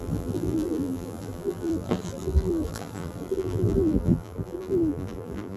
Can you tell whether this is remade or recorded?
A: remade